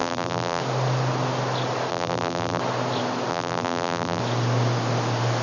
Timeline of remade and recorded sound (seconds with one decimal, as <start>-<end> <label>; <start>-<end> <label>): 0.0-0.6 remade; 0.6-1.9 recorded; 1.9-2.6 remade; 2.6-3.3 recorded; 3.3-4.2 remade; 4.2-5.4 recorded